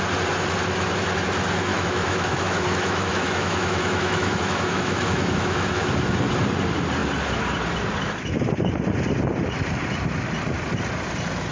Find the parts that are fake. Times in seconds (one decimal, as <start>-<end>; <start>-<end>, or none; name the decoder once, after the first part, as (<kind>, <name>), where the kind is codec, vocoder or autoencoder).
1.7-5.9 (autoencoder, DAC-VAE)